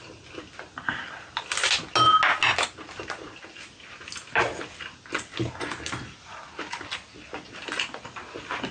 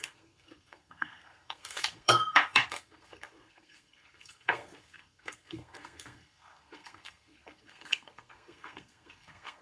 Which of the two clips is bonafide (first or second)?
first